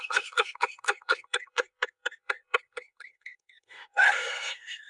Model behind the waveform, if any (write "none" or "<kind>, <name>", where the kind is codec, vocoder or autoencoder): codec, SNAC